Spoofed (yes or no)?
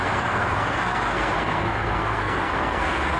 yes